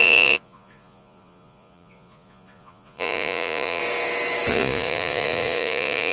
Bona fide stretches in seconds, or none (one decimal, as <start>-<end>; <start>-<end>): 3.8-4.5